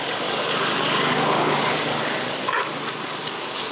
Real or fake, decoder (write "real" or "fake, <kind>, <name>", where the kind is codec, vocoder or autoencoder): fake, codec, DAC